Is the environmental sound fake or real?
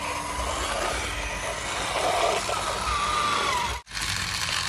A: real